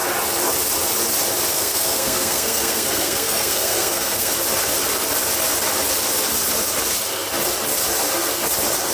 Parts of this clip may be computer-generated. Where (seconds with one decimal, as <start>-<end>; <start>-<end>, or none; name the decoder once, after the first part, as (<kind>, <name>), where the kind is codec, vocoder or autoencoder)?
1.5-4.3 (codec, SNAC)